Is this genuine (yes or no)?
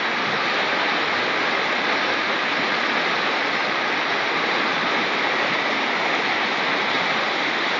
yes